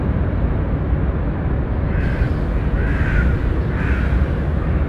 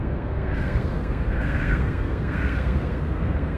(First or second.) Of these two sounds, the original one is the first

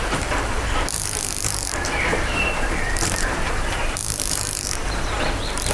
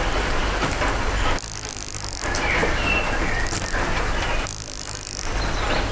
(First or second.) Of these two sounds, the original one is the second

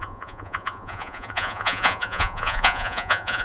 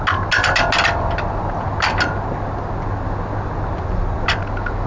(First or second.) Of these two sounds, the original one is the second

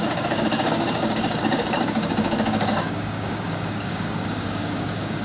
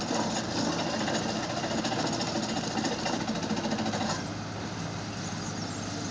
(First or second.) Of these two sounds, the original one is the second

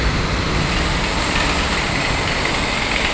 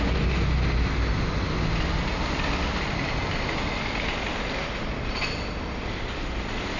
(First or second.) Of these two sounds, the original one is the second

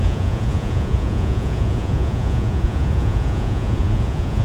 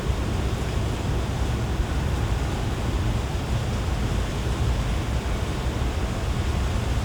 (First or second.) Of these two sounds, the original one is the second